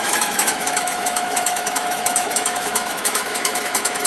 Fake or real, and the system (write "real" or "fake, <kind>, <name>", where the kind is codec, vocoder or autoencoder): fake, autoencoder, DAC-VAE